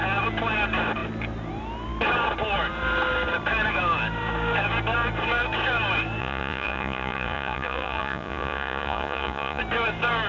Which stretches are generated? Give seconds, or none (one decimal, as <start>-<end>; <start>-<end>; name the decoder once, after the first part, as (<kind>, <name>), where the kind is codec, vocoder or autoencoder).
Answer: 6.2-9.6 (vocoder, Vocos)